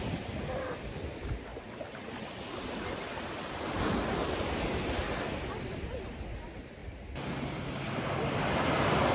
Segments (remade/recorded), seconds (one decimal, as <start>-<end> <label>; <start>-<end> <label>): 0.0-9.1 recorded